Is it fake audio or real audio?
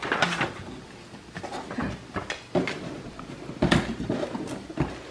real